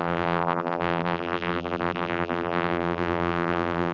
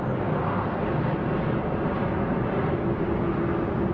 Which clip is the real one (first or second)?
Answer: second